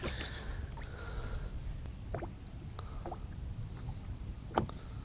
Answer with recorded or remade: recorded